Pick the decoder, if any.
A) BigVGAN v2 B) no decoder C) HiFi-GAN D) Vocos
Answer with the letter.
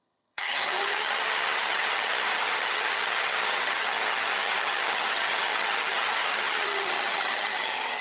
C